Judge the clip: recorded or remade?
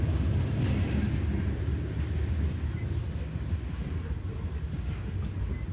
recorded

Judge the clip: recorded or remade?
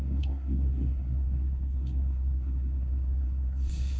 remade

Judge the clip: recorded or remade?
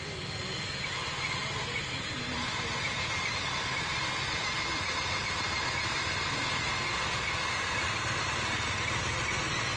recorded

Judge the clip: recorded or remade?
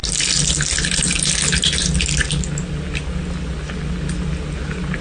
recorded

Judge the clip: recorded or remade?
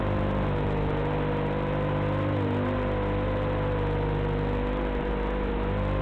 recorded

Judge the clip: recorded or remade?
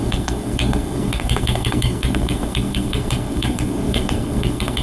remade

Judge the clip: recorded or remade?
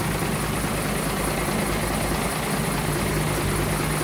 recorded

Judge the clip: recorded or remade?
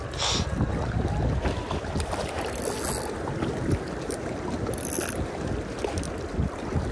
recorded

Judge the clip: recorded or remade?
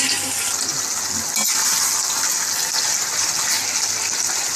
recorded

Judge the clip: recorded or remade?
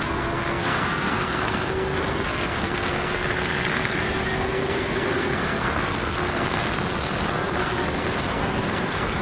remade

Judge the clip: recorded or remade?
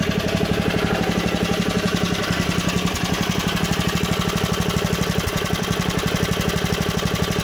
recorded